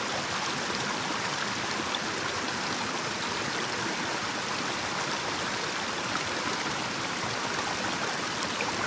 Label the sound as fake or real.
real